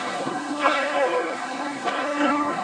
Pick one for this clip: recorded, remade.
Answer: remade